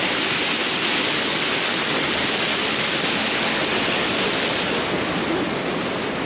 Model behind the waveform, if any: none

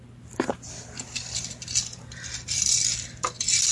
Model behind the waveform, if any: none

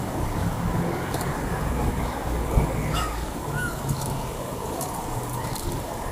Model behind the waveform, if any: codec, DAC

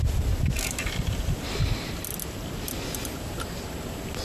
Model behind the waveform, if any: none